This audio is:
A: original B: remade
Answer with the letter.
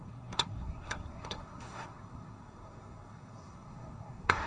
B